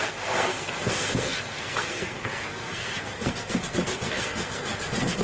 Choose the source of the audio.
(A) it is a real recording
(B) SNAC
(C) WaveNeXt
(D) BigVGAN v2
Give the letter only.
B